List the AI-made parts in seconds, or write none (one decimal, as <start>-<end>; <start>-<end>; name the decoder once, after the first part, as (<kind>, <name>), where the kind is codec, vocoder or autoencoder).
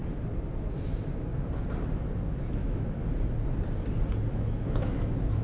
0.9-1.3 (autoencoder, DAC-VAE); 2.3-3.0; 4.3-5.4